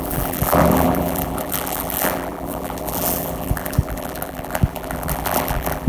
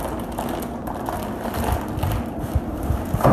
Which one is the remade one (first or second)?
first